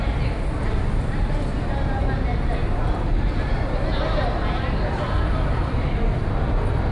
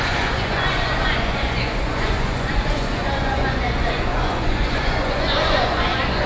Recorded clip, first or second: first